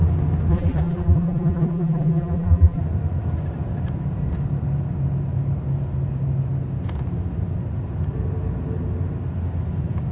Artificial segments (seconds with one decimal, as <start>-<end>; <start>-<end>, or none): 0.5-2.8